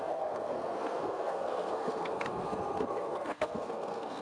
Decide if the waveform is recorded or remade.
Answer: remade